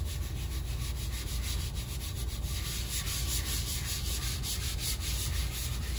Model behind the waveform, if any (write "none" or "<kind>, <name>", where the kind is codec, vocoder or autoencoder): none